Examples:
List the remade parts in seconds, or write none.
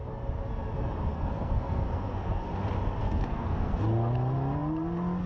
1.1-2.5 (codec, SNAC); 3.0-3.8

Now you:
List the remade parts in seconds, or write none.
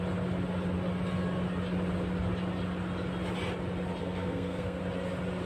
4.0-4.8 (codec, SNAC)